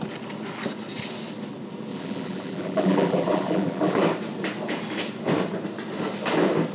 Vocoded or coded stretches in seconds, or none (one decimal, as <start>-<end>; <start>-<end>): 1.9-4.0